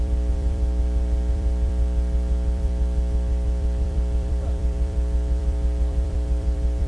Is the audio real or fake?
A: fake